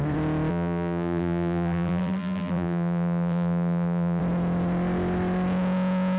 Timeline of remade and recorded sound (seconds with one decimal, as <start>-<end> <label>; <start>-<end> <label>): 0.0-0.5 recorded; 0.5-4.2 remade; 4.2-6.2 recorded

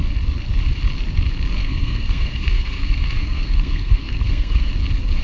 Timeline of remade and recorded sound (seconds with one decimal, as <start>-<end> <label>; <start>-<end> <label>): 0.0-1.6 recorded; 1.6-4.7 remade; 4.7-5.2 recorded

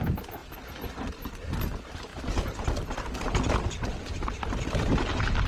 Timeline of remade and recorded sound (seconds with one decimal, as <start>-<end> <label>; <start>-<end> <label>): 0.0-5.5 recorded

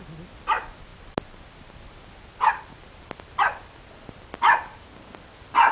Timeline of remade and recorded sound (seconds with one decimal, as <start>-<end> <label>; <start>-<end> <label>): 0.0-5.7 recorded

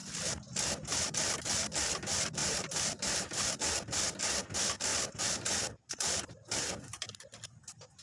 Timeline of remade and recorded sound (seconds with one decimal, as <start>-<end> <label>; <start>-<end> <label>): 0.0-0.6 remade; 0.6-2.4 recorded; 2.4-3.6 remade; 3.6-4.9 recorded; 4.9-6.7 remade; 6.7-8.0 recorded

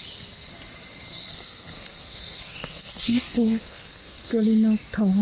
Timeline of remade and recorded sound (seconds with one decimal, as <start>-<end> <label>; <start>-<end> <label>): 0.0-1.3 recorded; 1.3-4.4 remade; 4.4-5.2 recorded

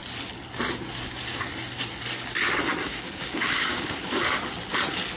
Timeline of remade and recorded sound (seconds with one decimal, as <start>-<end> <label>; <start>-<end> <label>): 0.0-2.8 recorded; 2.8-4.2 remade; 4.2-5.2 recorded